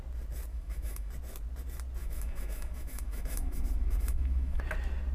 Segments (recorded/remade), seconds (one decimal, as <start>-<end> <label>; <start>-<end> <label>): 0.0-0.5 recorded; 0.5-1.1 remade; 1.1-2.0 recorded; 2.0-4.6 remade; 4.6-5.1 recorded

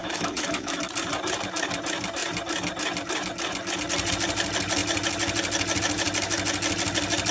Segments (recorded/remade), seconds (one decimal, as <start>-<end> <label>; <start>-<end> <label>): 0.0-0.8 remade; 0.8-7.3 recorded

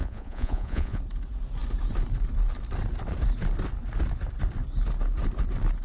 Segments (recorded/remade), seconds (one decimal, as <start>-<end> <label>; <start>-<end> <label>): 0.0-1.0 remade; 1.0-5.8 recorded